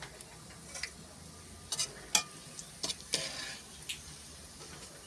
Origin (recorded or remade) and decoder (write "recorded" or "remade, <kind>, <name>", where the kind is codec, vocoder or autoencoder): recorded